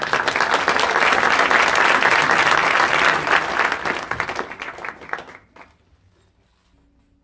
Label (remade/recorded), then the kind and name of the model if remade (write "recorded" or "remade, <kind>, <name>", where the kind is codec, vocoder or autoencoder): recorded